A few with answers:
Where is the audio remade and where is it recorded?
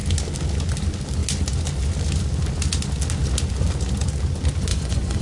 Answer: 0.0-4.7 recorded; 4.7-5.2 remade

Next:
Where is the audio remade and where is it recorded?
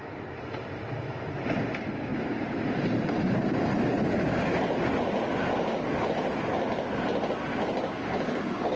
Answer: 0.0-7.5 recorded; 7.5-8.8 remade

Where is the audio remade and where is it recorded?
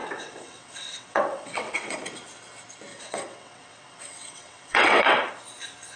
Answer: 0.0-2.0 remade; 2.0-2.9 recorded; 2.9-5.3 remade; 5.3-6.0 recorded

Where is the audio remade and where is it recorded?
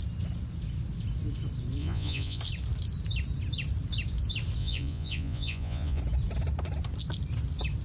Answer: 0.0-1.8 recorded; 1.8-2.4 remade; 2.4-4.6 recorded; 4.6-6.0 remade; 6.0-7.8 recorded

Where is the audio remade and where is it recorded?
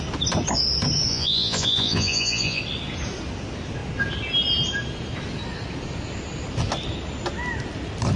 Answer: 0.0-1.1 recorded; 1.1-2.6 remade; 2.6-8.2 recorded